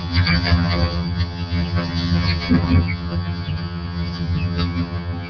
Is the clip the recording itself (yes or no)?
no